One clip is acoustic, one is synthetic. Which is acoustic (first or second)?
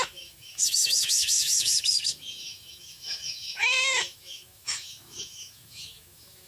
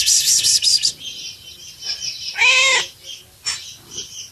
second